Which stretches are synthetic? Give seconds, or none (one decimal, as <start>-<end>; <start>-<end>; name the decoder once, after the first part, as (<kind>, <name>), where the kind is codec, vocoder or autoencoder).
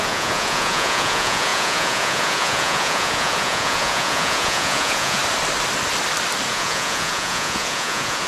0.0-5.2 (vocoder, Vocos); 6.5-8.3